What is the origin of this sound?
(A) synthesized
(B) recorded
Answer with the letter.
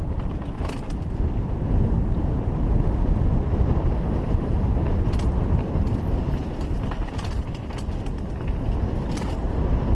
B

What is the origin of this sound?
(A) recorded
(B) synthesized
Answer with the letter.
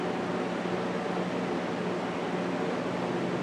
A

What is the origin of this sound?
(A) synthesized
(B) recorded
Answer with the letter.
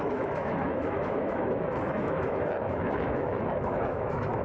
A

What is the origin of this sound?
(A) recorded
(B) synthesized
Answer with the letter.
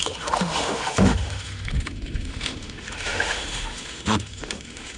B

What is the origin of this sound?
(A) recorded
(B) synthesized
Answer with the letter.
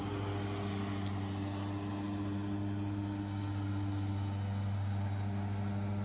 A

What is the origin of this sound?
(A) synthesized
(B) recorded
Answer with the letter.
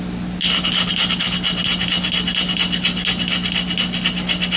B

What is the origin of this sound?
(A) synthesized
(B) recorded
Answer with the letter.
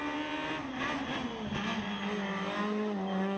B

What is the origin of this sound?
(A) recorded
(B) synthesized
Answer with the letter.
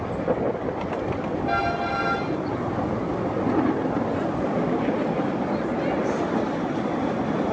A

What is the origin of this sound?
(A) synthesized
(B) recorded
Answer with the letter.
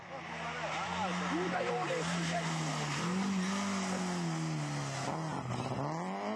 B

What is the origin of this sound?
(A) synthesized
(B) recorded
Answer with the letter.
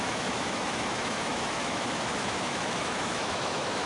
A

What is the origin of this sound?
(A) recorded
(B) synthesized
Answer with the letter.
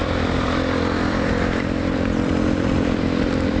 B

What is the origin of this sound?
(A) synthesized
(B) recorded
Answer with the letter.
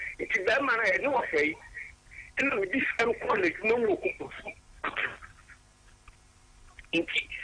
B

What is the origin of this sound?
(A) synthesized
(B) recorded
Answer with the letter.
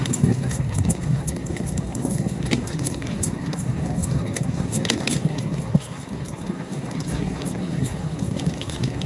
A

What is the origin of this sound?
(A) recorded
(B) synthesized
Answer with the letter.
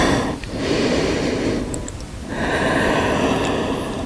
A